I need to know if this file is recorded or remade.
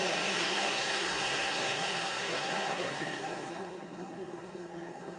remade